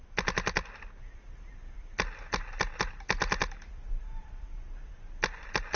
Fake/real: real